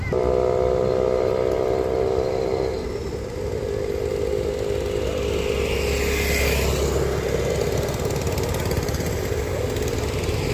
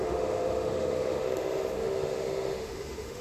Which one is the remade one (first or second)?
second